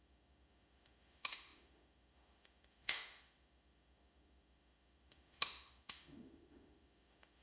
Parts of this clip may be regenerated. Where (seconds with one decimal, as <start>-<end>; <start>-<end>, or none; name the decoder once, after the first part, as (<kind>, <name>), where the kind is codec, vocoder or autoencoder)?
0.0-7.4 (autoencoder, DAC-VAE)